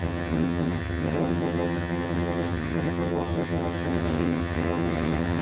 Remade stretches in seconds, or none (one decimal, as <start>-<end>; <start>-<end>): 0.0-5.4